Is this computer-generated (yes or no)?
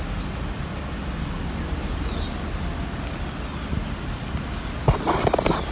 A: no